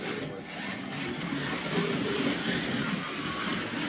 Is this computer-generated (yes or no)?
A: no